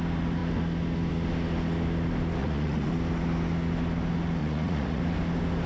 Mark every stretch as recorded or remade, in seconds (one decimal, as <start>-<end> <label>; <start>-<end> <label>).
0.0-2.4 recorded; 2.4-2.9 remade; 2.9-4.4 recorded; 4.4-5.0 remade; 5.0-5.7 recorded